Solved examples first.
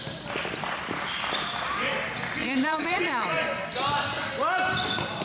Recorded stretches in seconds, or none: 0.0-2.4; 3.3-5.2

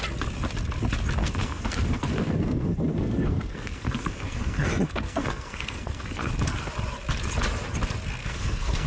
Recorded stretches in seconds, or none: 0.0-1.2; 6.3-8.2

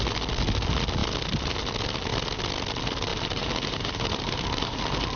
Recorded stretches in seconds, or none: 0.0-3.1; 4.8-5.2

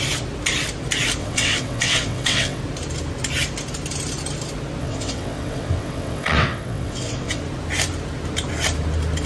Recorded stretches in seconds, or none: 0.0-1.2; 2.6-4.8; 7.4-9.3

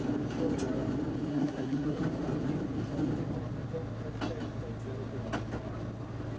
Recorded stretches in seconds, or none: 0.0-1.3; 2.0-6.4